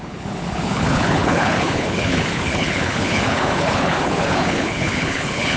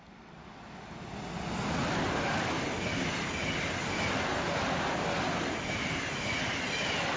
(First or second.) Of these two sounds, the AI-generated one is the first